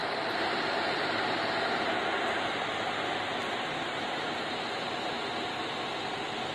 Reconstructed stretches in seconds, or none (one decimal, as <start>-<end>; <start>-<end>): 0.0-2.0; 3.4-5.1